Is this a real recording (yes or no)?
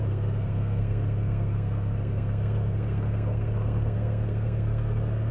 no